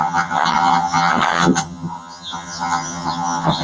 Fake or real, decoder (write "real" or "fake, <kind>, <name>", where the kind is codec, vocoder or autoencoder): fake, vocoder, HiFi-GAN